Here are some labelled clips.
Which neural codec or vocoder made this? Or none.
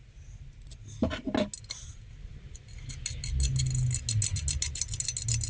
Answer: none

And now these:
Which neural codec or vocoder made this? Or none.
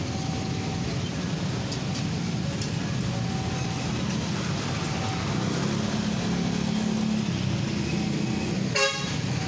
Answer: none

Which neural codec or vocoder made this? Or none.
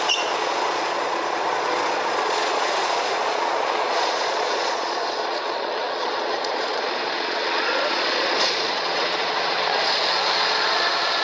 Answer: vocoder, Vocos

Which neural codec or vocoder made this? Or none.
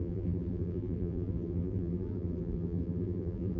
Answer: vocoder, BigVGAN v2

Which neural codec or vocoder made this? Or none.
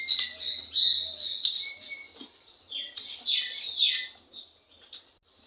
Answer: none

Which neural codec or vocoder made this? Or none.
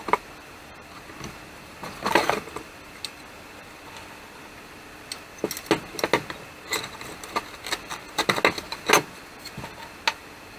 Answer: none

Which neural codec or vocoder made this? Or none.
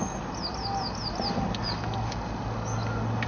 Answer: none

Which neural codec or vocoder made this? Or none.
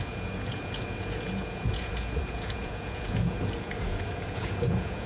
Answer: vocoder, Vocos